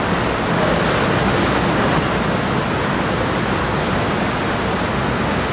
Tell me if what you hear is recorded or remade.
recorded